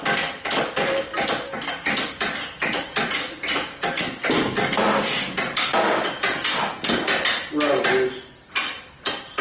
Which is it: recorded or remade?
recorded